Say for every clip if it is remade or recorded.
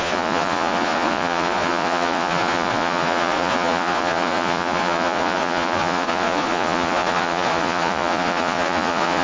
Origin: remade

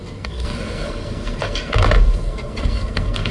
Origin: remade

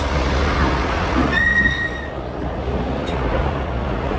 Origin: remade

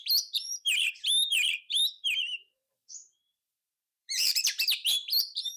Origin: remade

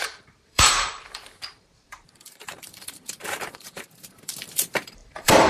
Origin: remade